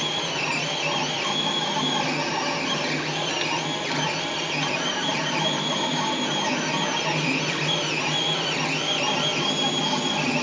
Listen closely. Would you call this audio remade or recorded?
recorded